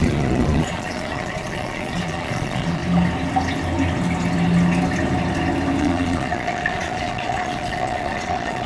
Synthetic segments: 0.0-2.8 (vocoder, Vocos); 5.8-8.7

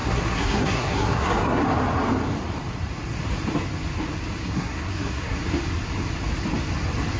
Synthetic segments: 0.0-1.6 (codec, SNAC); 4.4-5.4

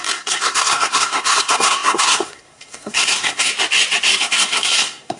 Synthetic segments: 0.0-3.5 (codec, SNAC); 4.2-5.2

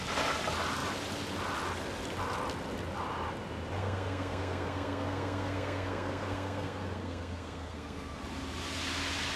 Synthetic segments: 3.8-8.2 (codec, SNAC)

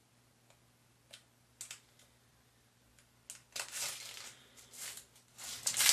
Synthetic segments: none

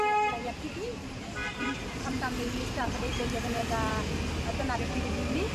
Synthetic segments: 1.4-2.2 (vocoder, BigVGAN v2); 3.1-3.9

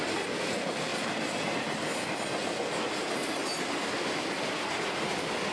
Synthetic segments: none

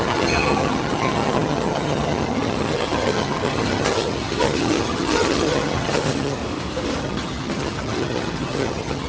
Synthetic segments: 0.0-6.4 (vocoder, HiFi-GAN); 7.0-9.1